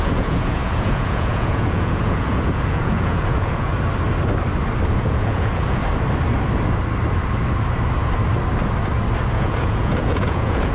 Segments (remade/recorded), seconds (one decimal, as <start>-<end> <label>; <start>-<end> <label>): 0.0-3.7 remade; 3.7-4.9 recorded; 4.9-5.8 remade; 5.8-9.3 recorded; 9.3-10.7 remade